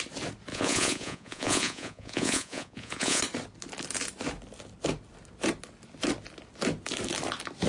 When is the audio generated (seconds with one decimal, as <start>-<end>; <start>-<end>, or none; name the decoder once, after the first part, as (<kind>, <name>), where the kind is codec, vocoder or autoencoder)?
0.5-3.2 (vocoder, Vocos)